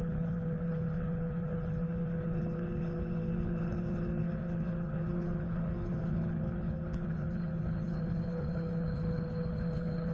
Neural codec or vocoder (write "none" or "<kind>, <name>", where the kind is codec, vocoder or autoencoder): codec, HILCodec